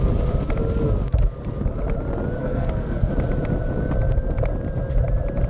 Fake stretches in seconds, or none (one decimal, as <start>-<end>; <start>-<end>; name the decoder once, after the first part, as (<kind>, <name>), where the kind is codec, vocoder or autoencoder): 2.4-3.1 (codec, SNAC)